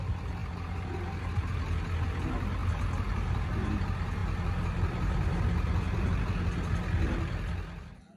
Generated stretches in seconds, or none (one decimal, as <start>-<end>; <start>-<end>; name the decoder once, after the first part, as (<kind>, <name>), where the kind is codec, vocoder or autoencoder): none